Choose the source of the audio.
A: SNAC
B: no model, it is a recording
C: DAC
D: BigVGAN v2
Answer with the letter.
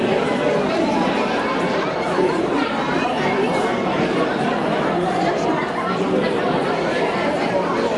D